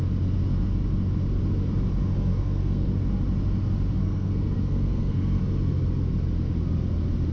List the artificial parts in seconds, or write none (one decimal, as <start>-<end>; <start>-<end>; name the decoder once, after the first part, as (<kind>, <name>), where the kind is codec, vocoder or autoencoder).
2.3-2.9 (codec, SNAC); 4.0-5.4